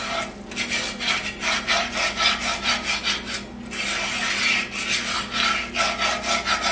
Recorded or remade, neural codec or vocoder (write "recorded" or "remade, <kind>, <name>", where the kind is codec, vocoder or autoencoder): recorded